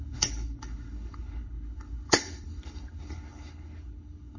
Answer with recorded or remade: remade